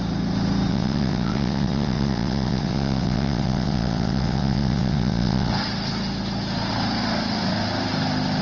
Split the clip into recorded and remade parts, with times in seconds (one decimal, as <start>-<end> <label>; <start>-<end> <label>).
0.0-0.7 recorded; 0.7-5.5 remade; 5.5-8.4 recorded